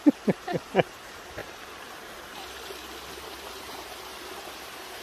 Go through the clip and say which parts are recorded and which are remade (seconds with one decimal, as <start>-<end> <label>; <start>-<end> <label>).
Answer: 0.0-1.4 remade; 1.4-3.1 recorded; 3.1-4.1 remade; 4.1-5.0 recorded